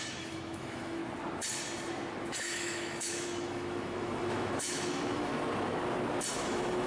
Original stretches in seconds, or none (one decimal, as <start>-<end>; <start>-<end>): 1.0-2.4; 5.3-6.3